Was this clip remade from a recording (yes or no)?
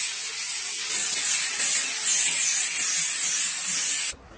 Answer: no